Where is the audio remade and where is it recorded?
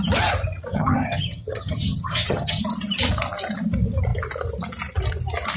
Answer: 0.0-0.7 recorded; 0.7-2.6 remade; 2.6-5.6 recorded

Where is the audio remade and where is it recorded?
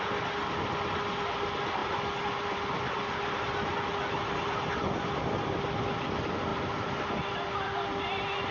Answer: 0.0-8.5 recorded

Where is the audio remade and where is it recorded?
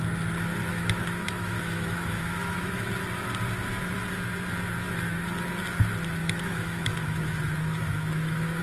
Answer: 0.0-0.7 recorded; 0.7-2.9 remade; 2.9-6.2 recorded; 6.2-8.6 remade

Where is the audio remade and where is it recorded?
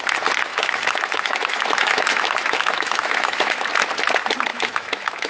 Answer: 0.0-0.5 recorded; 0.5-3.7 remade; 3.7-4.5 recorded; 4.5-5.3 remade